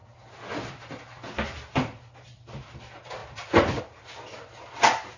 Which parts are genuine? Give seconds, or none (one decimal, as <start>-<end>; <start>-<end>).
0.0-5.2